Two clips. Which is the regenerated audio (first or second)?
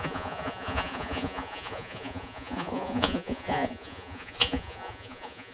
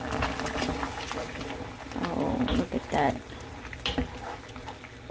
first